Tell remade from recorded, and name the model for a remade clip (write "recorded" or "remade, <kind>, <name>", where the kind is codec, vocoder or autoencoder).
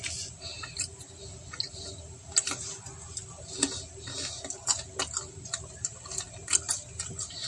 recorded